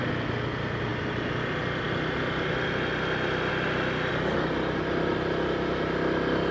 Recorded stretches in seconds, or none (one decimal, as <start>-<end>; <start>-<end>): 0.0-6.5